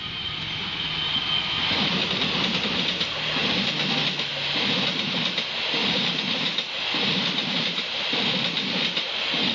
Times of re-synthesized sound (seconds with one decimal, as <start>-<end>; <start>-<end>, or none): 5.8-8.0